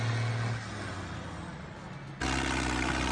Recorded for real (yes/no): yes